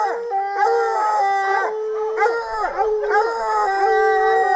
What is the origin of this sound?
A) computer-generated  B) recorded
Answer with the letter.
B